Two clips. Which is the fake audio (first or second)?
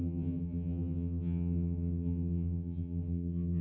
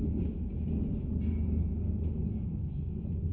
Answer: first